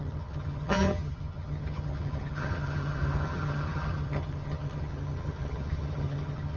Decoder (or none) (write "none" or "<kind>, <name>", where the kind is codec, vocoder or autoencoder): vocoder, HiFi-GAN